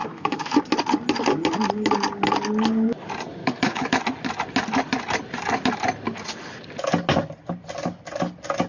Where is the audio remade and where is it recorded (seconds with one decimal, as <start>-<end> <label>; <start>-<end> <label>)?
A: 0.0-0.6 remade; 0.6-3.4 recorded; 3.4-4.0 remade; 4.0-8.7 recorded